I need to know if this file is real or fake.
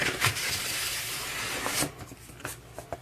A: real